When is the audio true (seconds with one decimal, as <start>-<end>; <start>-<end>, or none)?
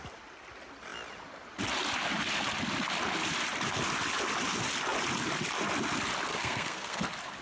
0.0-6.3; 7.0-7.4